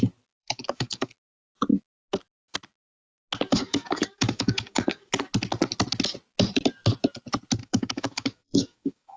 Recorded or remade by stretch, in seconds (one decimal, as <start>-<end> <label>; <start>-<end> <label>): 0.0-0.4 recorded; 0.4-1.1 remade; 1.1-3.5 recorded; 3.5-5.1 remade; 5.1-7.6 recorded; 7.6-9.2 remade